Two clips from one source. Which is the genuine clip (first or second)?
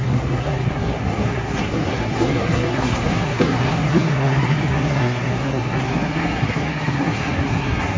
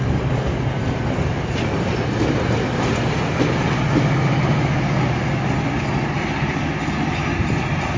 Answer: second